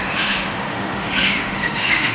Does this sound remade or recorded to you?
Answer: remade